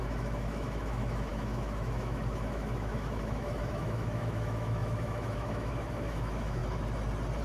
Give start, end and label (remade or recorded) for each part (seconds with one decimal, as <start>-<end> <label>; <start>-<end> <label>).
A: 0.0-6.6 remade; 6.6-7.4 recorded